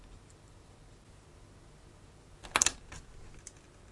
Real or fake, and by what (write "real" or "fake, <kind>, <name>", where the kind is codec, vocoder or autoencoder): real